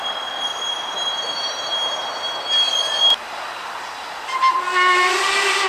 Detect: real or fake real